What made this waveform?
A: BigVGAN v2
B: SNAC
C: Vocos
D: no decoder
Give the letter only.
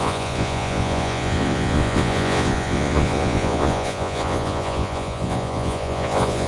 C